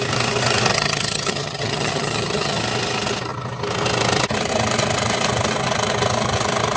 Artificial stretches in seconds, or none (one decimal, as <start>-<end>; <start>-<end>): 0.7-2.6

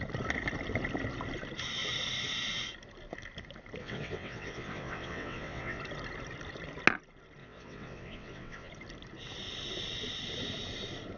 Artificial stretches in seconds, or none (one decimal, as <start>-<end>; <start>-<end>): 3.8-5.8; 7.4-8.7

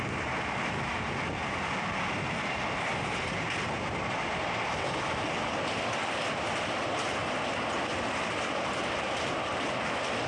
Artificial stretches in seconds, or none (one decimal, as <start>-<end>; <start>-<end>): none

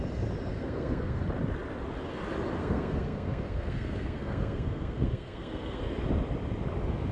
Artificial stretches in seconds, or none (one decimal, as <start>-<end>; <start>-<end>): 0.5-1.2; 2.6-5.8

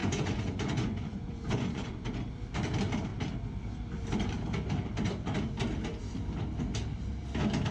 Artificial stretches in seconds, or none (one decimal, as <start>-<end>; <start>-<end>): 0.0-2.2

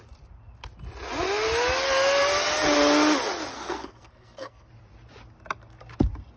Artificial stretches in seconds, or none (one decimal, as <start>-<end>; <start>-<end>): 3.5-4.7